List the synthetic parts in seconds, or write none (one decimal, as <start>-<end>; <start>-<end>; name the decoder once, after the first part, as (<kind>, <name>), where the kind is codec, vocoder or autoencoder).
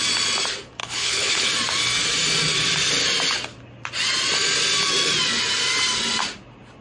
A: 0.8-1.5 (codec, HILCodec)